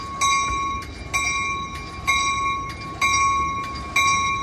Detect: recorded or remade recorded